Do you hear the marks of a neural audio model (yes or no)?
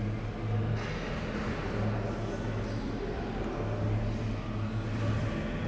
no